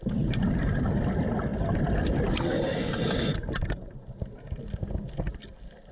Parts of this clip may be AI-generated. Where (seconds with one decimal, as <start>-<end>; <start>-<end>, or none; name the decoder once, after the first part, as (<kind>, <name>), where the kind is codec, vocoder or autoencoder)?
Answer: none